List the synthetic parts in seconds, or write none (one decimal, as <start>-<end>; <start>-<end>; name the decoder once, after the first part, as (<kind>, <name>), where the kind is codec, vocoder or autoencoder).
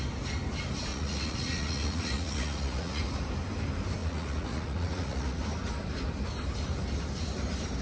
0.9-3.0 (vocoder, Vocos); 4.0-5.4